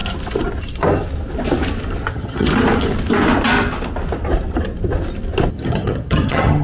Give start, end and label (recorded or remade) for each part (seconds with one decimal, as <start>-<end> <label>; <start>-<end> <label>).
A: 0.0-2.1 recorded; 2.1-2.5 remade; 2.5-5.5 recorded; 5.5-6.6 remade